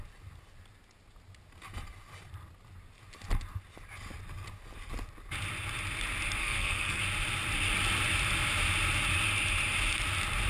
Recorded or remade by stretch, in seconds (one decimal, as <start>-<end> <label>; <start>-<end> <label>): 0.0-6.4 recorded; 6.4-7.0 remade; 7.0-10.5 recorded